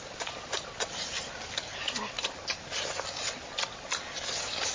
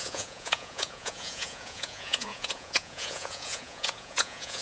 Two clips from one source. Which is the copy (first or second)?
second